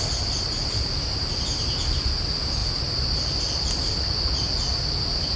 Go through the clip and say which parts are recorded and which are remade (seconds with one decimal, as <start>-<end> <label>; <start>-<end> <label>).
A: 0.0-5.4 recorded